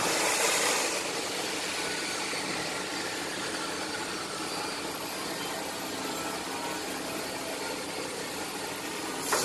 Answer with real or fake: real